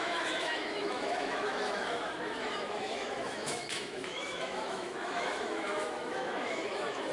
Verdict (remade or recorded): remade